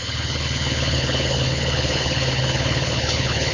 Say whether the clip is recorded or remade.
remade